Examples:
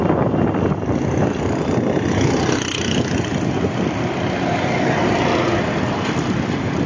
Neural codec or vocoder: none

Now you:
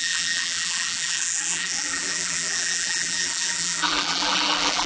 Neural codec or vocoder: vocoder, BigVGAN v2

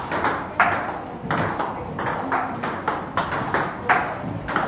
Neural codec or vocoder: none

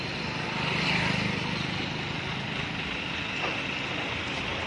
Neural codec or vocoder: none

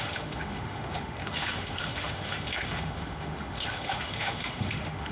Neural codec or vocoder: autoencoder, DAC-VAE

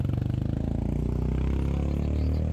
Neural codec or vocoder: none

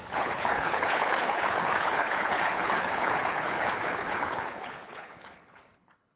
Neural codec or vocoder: codec, HILCodec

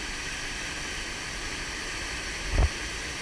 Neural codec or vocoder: none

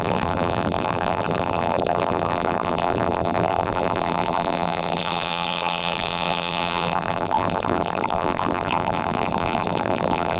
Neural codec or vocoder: vocoder, BigVGAN v2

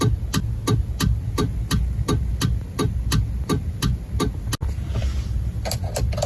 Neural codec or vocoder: none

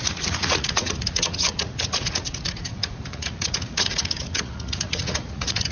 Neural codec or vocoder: vocoder, Vocos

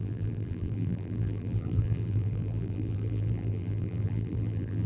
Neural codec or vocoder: vocoder, BigVGAN v2